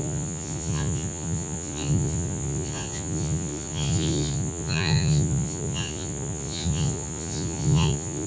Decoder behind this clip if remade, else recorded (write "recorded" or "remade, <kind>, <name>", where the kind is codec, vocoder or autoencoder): remade, vocoder, Vocos